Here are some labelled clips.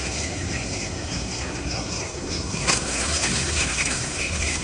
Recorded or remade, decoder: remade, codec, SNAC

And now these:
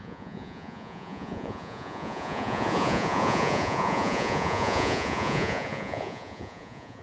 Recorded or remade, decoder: remade, vocoder, Vocos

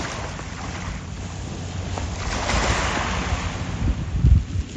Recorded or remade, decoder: recorded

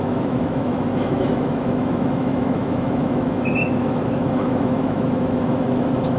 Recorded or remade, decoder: remade, autoencoder, DAC-VAE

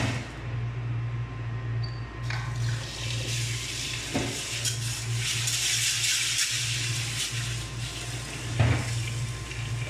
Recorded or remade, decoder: recorded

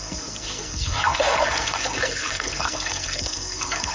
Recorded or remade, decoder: remade, codec, SNAC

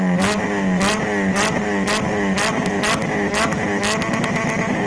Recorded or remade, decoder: recorded